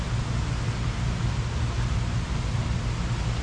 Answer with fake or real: real